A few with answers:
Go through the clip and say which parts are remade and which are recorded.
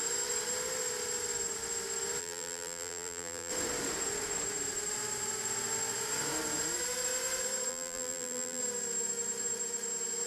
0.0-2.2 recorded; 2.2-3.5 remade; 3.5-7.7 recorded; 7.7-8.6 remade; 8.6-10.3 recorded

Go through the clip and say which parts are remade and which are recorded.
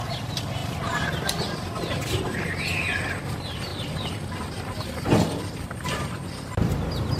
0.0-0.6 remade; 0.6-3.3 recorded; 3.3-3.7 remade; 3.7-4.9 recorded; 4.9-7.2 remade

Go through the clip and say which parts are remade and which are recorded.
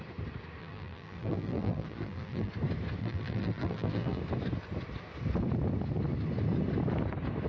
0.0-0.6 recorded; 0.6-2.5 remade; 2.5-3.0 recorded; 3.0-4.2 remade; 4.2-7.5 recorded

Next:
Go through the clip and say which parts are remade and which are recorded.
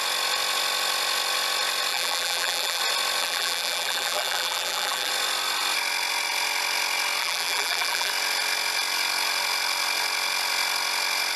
0.0-1.9 recorded; 1.9-2.8 remade; 2.8-3.2 recorded; 3.2-5.1 remade; 5.1-7.2 recorded; 7.2-8.1 remade; 8.1-11.4 recorded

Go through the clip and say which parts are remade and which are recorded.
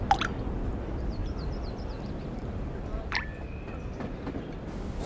0.0-1.2 recorded; 1.2-4.3 remade; 4.3-5.1 recorded